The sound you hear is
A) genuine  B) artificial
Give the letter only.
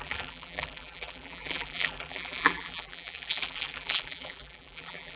B